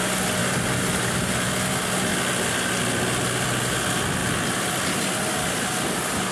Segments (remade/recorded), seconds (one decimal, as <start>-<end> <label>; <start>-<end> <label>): 0.0-6.3 recorded